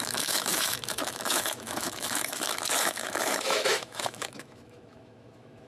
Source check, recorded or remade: remade